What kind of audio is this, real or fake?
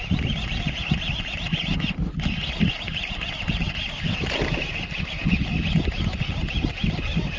real